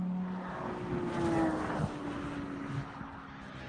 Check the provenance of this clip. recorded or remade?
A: recorded